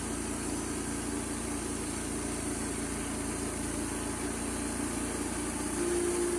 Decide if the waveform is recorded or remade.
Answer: recorded